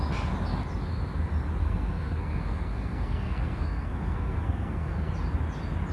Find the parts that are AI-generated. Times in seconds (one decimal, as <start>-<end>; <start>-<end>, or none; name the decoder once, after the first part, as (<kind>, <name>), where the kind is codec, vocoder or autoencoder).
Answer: 1.6-5.1 (codec, SNAC)